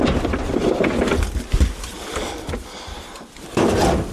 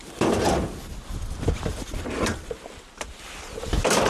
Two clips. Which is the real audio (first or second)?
first